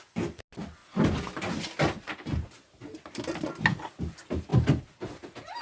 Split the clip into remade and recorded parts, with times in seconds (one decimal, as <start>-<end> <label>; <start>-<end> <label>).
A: 0.0-5.6 recorded